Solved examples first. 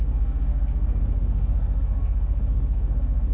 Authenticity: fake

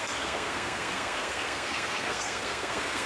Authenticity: fake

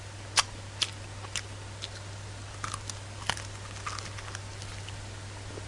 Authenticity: real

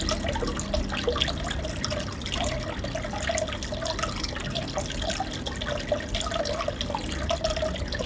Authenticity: real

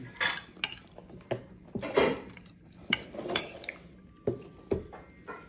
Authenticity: real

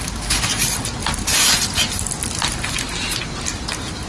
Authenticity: real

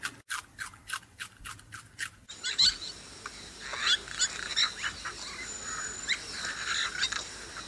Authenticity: real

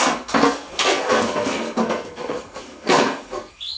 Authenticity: fake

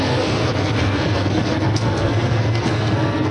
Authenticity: fake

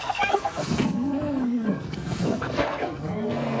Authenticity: fake